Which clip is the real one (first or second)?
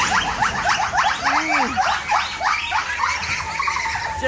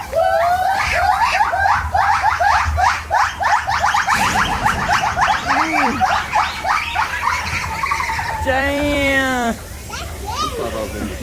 first